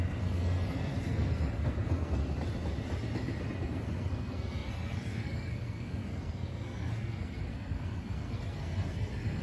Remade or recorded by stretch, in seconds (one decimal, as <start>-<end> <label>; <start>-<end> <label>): 0.0-2.2 remade; 2.2-3.4 recorded; 3.4-9.4 remade